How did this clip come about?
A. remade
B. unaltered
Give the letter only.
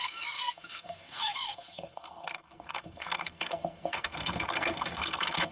A